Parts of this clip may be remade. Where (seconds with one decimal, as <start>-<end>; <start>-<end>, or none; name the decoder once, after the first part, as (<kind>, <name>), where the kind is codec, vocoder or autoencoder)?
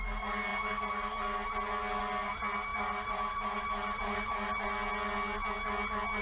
2.7-4.7 (vocoder, BigVGAN v2)